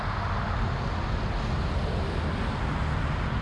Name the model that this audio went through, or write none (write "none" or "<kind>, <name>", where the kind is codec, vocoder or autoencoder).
none